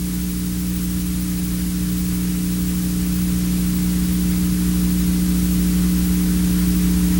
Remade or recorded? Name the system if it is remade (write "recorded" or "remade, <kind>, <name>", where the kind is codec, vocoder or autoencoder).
recorded